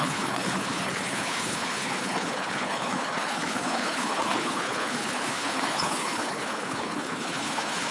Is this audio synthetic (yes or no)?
yes